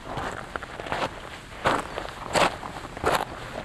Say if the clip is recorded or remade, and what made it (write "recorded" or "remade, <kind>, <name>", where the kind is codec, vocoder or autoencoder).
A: recorded